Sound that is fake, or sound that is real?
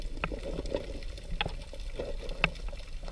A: real